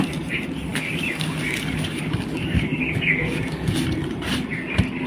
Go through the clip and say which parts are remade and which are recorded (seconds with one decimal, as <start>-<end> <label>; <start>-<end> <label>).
0.0-0.7 recorded; 0.7-3.8 remade; 3.8-5.1 recorded